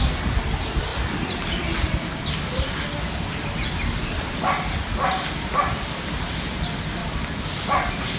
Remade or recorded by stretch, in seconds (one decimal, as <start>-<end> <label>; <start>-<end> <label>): 0.0-0.9 recorded; 0.9-5.6 remade; 5.6-7.0 recorded; 7.0-8.2 remade